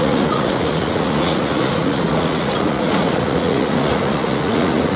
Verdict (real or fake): fake